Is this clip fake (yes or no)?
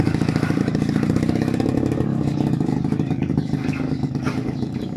yes